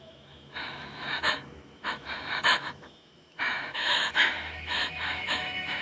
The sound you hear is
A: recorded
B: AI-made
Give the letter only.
B